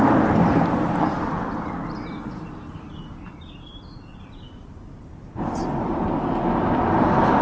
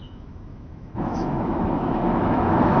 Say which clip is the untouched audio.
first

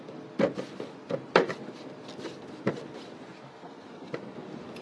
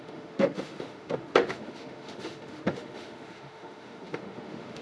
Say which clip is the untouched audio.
first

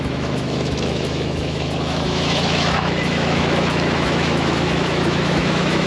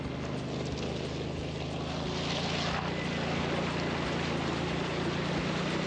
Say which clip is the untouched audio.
second